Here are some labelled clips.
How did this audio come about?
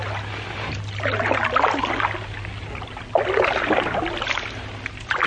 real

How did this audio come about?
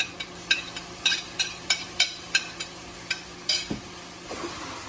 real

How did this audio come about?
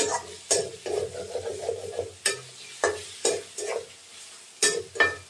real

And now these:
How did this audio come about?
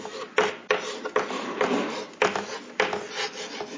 real